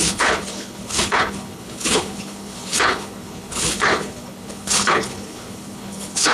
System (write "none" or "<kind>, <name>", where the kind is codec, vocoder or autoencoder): codec, HILCodec